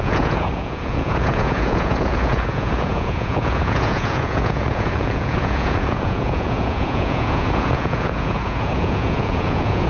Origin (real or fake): fake